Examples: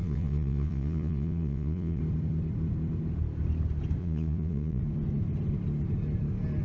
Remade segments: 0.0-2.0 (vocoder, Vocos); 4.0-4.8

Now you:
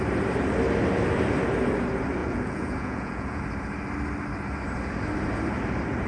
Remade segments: 2.2-3.4 (vocoder, Vocos)

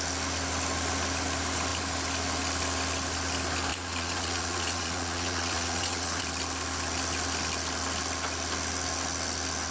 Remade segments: 3.7-6.2 (vocoder, Vocos)

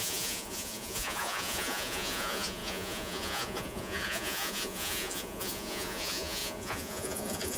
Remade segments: 0.0-7.6 (vocoder, Vocos)

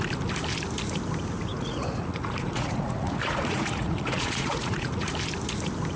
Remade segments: 1.5-5.1 (vocoder, Vocos)